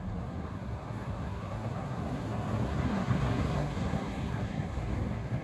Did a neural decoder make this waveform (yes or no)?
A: yes